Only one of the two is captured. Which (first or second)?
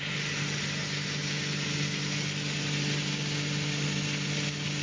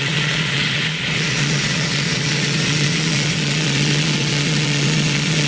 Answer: first